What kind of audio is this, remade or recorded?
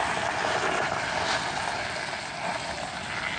recorded